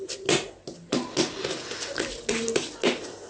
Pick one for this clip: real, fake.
real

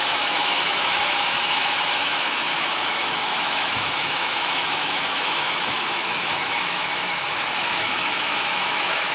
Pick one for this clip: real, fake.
fake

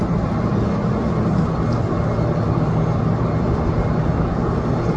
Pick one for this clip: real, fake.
real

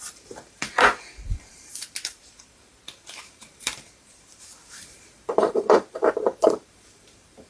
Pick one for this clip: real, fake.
fake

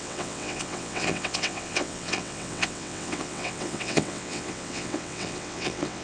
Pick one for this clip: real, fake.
fake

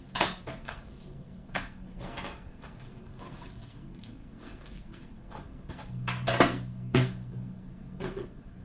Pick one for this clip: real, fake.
fake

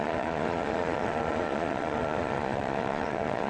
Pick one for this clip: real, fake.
fake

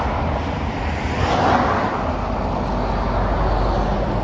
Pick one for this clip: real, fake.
real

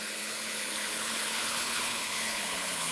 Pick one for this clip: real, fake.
fake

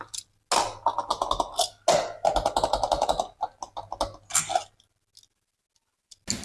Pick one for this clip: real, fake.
real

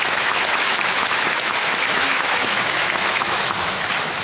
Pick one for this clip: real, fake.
fake